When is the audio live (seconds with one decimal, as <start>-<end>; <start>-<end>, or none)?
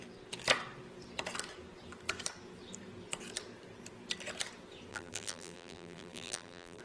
0.0-4.9